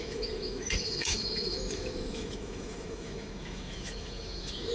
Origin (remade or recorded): remade